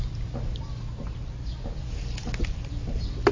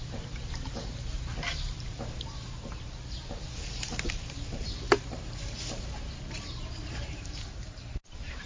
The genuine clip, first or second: first